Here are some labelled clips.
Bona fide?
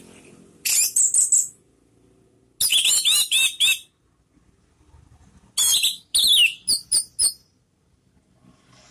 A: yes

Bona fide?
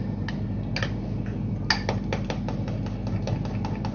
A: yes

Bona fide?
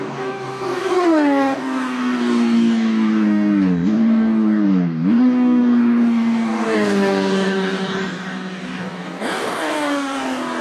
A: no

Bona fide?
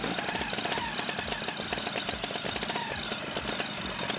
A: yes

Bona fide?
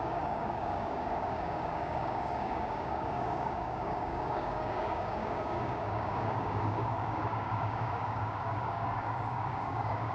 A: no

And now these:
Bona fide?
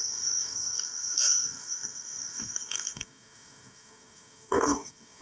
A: no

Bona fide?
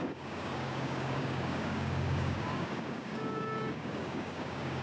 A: no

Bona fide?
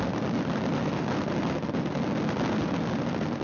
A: yes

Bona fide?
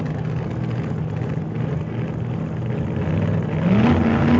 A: yes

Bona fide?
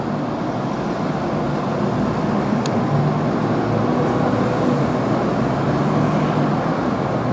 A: yes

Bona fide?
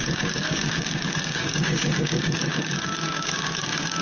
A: no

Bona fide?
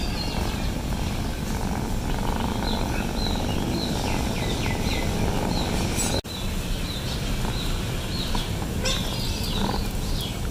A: yes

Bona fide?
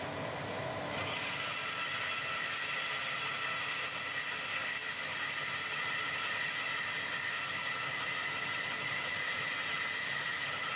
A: yes